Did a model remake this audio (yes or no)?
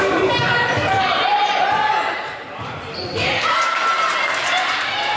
yes